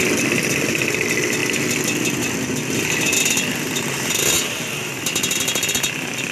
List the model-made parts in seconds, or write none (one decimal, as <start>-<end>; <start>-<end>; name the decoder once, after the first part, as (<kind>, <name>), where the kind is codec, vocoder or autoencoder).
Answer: none